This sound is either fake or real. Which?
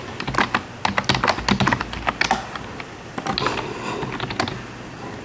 real